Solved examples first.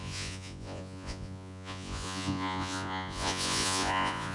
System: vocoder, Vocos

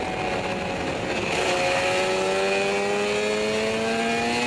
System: none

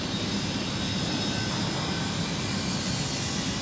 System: none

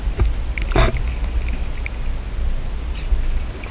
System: none